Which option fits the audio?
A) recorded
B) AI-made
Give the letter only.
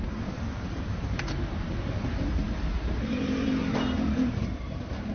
B